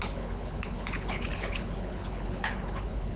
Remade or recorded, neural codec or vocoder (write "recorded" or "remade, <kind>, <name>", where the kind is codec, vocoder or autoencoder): remade, codec, HILCodec